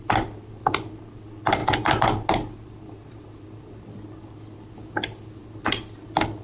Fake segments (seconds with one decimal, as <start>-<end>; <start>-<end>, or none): none